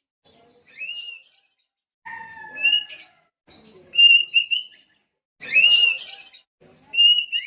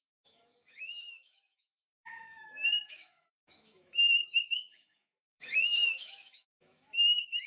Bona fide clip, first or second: first